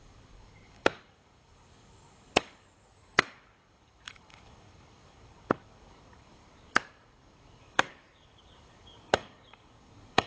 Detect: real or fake fake